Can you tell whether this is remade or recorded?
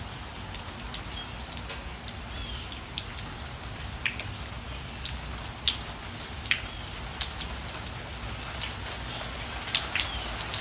recorded